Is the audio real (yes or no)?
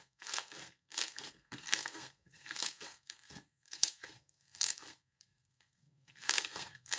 no